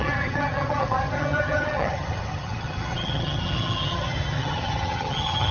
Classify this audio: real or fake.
fake